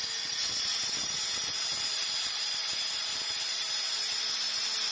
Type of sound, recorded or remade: recorded